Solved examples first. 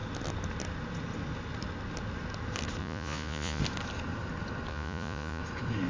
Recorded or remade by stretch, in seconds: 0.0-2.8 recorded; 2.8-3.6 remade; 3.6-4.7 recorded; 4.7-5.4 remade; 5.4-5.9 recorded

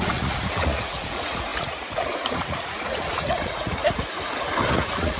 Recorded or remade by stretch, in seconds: 0.0-3.8 remade; 3.8-4.7 recorded; 4.7-5.2 remade

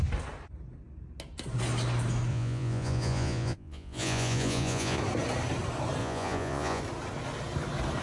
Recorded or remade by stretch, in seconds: 0.0-2.3 recorded; 2.3-5.0 remade; 5.0-6.0 recorded; 6.0-6.8 remade; 6.8-8.0 recorded

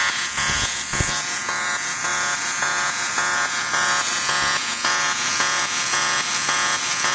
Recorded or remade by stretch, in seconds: 0.0-7.1 remade

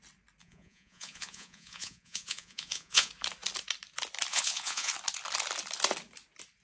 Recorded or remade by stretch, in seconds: 0.0-0.4 recorded; 0.4-3.1 remade; 3.1-4.3 recorded; 4.3-4.9 remade; 4.9-6.6 recorded

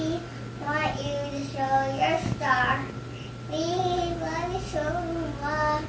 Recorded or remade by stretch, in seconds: 0.0-5.9 recorded

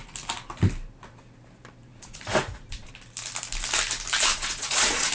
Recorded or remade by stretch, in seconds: 0.0-1.9 recorded; 1.9-2.9 remade; 2.9-4.3 recorded; 4.3-5.1 remade